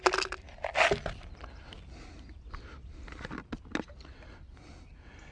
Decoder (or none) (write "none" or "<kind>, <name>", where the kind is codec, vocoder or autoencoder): none